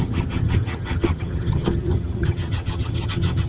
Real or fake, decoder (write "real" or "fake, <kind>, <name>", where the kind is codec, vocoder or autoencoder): fake, vocoder, HiFi-GAN